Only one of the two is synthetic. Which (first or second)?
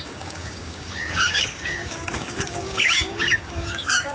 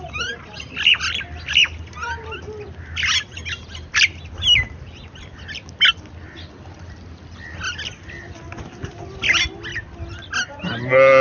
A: first